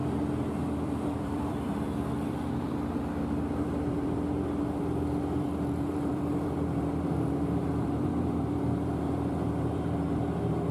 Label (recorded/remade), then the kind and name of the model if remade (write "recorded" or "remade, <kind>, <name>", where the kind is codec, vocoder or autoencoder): remade, vocoder, BigVGAN v2